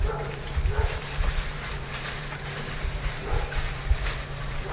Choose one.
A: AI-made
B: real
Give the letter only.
A